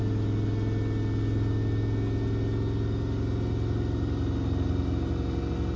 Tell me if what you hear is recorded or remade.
recorded